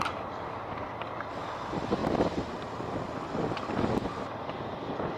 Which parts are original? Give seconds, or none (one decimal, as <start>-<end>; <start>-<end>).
0.0-5.2